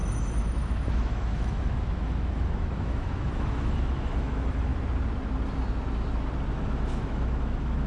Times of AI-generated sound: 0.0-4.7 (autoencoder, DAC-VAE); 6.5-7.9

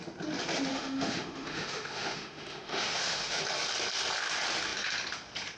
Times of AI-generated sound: 0.7-3.4 (autoencoder, DAC-VAE)

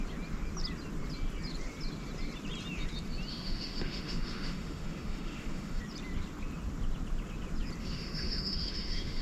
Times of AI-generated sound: 3.3-5.8 (autoencoder, DAC-VAE); 7.8-9.2

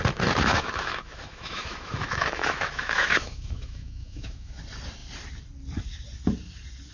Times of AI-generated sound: 0.5-4.6 (autoencoder, DAC-VAE)

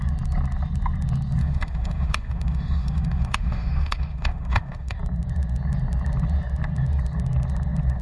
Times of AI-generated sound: 1.4-5.0 (autoencoder, DAC-VAE)